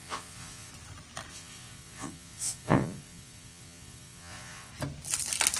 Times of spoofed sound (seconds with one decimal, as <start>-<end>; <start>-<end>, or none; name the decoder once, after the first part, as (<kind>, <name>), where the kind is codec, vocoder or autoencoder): 0.0-0.7 (vocoder, Vocos); 1.3-4.7